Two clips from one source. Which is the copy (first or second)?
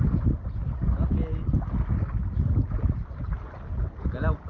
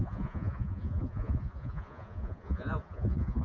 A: second